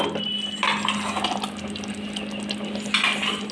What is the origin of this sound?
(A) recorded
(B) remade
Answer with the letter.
A